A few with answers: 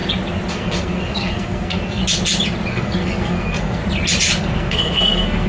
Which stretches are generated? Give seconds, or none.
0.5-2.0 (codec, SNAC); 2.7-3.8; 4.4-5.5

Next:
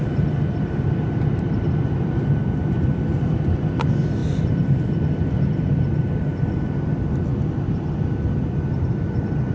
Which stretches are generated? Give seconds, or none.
none

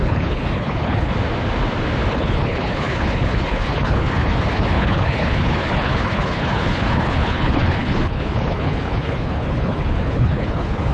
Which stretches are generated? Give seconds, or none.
0.0-1.1 (codec, HILCodec); 2.1-10.9

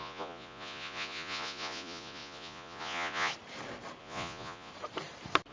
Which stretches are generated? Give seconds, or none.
0.0-3.3 (vocoder, Vocos); 4.0-4.7